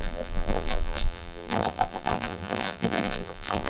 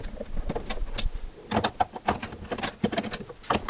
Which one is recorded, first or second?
second